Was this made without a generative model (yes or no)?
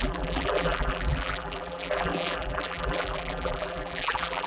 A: no